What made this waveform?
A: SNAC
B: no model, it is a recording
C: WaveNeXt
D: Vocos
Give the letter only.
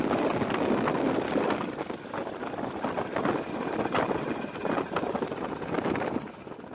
B